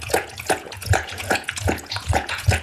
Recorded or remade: remade